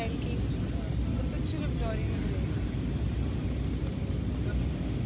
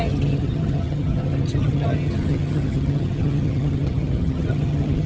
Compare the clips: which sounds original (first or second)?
first